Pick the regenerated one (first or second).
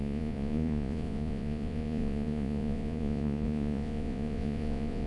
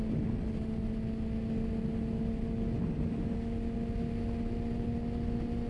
first